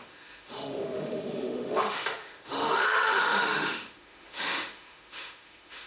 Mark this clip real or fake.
fake